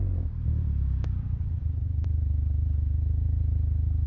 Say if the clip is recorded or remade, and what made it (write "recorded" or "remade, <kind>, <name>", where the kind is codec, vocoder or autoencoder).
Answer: remade, vocoder, BigVGAN v2